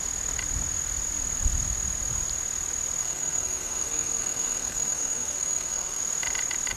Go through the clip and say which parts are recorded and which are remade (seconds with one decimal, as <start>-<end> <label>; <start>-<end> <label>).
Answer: 0.0-3.0 recorded; 3.0-6.0 remade; 6.0-6.8 recorded